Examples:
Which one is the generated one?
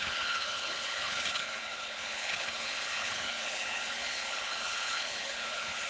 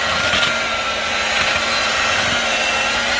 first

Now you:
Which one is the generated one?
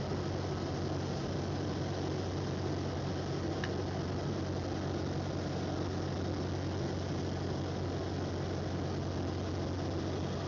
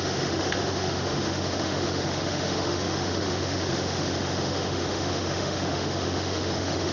second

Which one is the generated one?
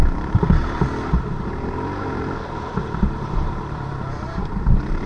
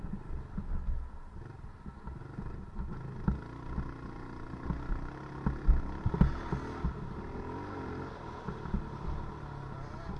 first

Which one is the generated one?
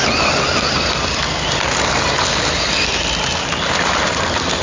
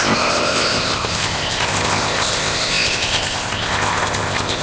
second